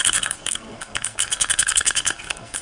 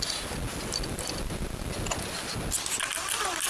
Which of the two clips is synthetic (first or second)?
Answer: first